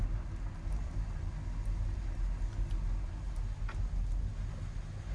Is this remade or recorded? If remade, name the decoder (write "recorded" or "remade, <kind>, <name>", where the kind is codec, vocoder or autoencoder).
recorded